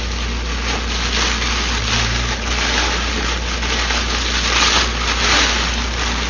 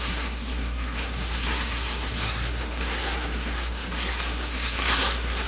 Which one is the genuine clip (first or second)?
first